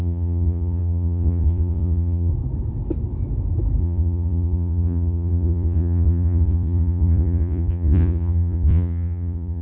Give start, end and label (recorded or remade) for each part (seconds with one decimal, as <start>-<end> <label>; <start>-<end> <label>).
0.0-2.3 remade; 2.3-3.8 recorded; 3.8-9.6 remade